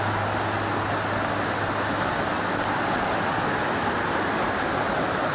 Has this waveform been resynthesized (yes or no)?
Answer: no